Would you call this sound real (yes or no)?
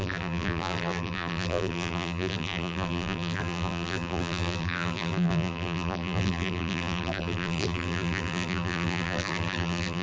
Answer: no